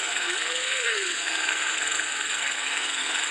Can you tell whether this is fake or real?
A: fake